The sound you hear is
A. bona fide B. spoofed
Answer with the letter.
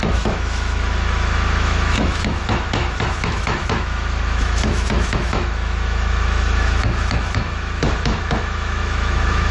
B